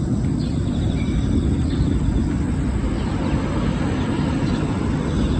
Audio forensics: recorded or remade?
recorded